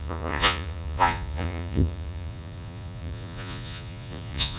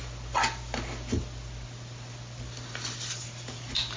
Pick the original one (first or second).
second